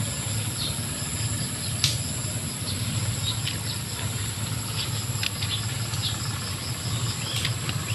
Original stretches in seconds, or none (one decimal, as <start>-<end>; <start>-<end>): 0.0-6.0; 7.1-7.9